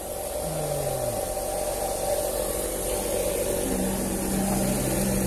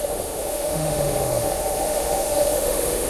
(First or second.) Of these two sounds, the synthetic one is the second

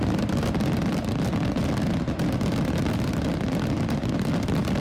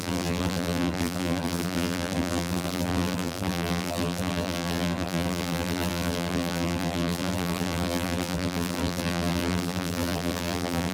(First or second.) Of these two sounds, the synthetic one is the second